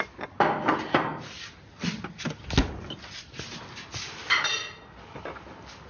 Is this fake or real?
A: real